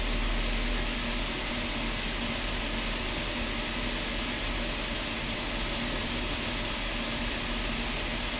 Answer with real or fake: real